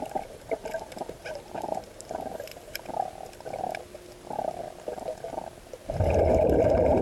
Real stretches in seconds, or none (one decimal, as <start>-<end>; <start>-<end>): 2.5-6.1